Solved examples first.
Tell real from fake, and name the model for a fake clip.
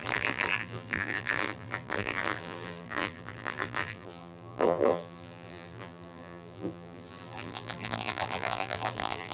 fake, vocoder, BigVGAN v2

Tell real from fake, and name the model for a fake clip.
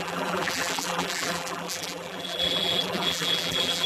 fake, vocoder, BigVGAN v2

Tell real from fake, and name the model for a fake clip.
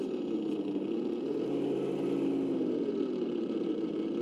real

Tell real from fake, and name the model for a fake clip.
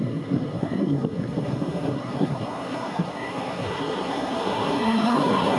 fake, codec, SNAC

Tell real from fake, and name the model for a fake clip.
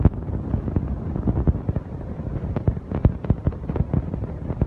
fake, vocoder, BigVGAN v2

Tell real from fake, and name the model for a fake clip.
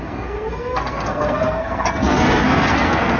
fake, codec, SNAC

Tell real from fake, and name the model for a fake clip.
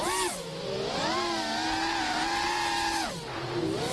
real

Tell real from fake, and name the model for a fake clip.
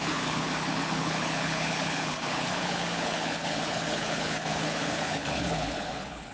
fake, codec, HILCodec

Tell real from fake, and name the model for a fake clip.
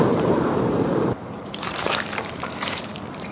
fake, vocoder, BigVGAN v2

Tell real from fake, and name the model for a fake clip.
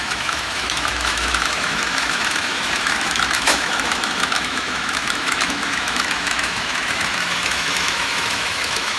fake, autoencoder, DAC-VAE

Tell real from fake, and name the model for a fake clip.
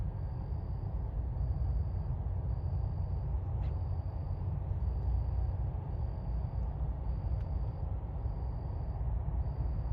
real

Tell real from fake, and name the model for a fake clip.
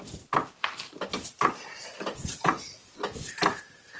real